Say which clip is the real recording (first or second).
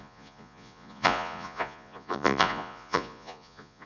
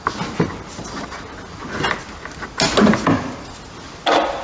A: second